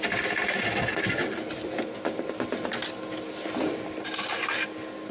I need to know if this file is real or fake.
real